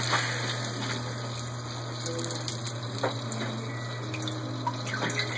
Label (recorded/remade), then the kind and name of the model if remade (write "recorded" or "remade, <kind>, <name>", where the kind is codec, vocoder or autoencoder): recorded